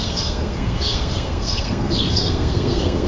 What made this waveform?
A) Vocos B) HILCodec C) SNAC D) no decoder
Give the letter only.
C